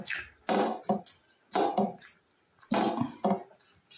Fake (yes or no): no